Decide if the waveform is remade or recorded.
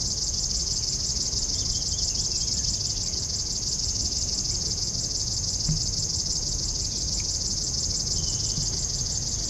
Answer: recorded